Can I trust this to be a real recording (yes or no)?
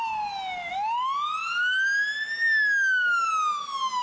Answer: yes